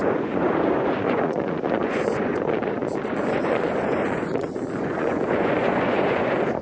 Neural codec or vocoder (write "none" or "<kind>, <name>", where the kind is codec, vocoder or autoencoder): vocoder, Vocos